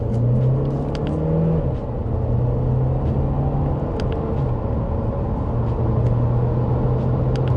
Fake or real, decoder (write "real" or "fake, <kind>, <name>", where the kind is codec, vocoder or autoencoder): real